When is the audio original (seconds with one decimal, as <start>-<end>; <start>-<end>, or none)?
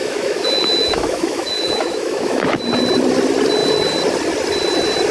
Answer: 2.6-5.1